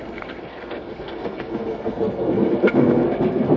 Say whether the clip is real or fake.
fake